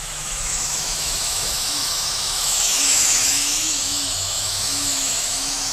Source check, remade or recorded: remade